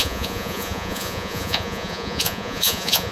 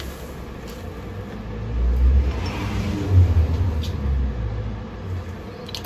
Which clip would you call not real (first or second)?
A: first